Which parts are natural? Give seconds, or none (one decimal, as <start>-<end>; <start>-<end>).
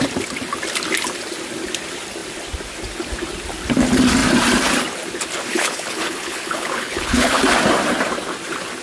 0.0-5.5; 7.4-8.8